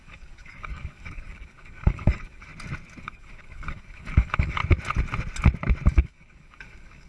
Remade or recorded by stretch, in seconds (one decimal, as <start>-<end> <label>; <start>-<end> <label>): 0.0-2.5 remade; 2.5-3.0 recorded; 3.0-4.6 remade; 4.6-5.9 recorded; 5.9-7.1 remade